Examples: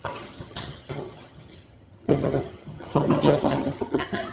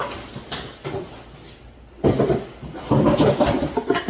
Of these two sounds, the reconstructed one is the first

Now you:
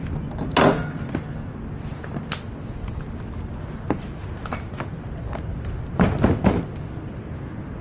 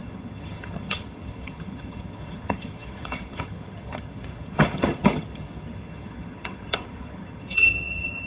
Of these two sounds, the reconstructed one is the second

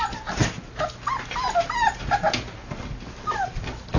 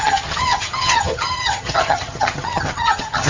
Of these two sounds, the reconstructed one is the second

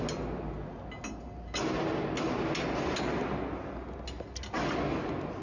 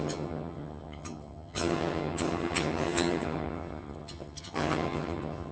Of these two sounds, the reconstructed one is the second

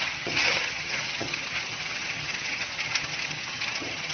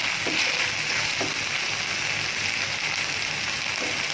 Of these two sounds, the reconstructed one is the first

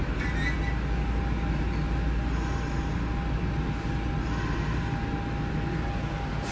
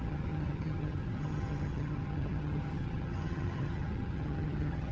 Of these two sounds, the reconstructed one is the second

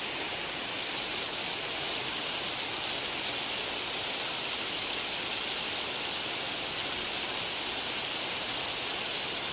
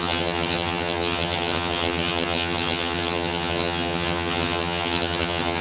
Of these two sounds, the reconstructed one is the second